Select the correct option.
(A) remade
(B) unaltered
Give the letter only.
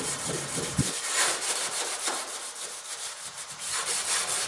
A